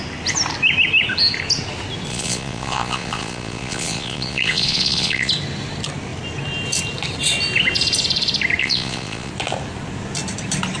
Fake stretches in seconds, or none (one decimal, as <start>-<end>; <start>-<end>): 2.1-5.3; 8.6-9.3